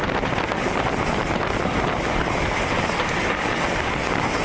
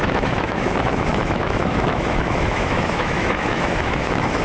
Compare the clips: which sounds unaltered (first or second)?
first